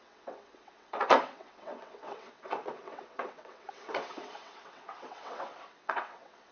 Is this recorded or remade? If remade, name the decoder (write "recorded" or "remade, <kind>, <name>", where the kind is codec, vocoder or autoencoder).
remade, vocoder, WaveNeXt